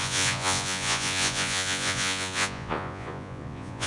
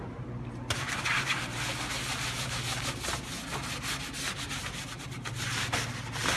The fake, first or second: first